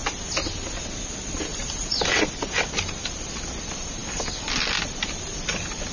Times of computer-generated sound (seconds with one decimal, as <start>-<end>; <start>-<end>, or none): 3.5-5.9